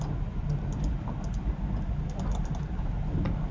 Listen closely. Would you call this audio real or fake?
real